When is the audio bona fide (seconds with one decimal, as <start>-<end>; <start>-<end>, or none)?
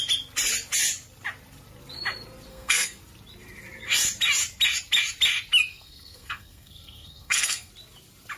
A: 0.0-2.5; 3.0-5.7; 7.7-8.4